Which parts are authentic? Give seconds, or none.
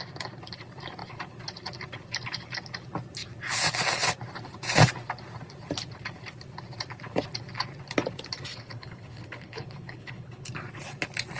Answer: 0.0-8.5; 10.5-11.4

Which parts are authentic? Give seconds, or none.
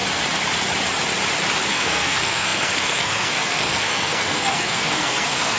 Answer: 0.0-1.7